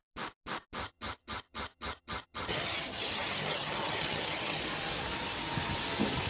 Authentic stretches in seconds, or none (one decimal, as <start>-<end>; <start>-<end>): 0.0-0.8; 4.6-6.3